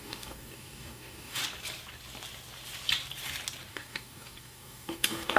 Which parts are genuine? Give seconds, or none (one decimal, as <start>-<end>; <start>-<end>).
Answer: 1.4-3.7